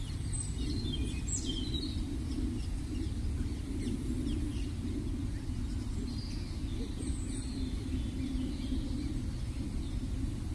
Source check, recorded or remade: recorded